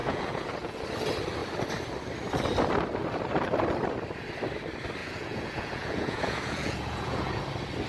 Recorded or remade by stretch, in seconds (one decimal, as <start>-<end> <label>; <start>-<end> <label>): 0.0-0.8 remade; 0.8-5.0 recorded; 5.0-7.4 remade; 7.4-7.9 recorded